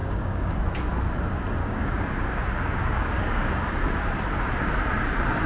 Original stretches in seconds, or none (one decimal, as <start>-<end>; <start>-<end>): 0.6-1.6; 4.0-5.5